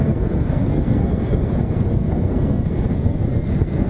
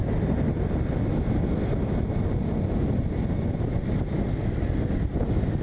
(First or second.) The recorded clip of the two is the second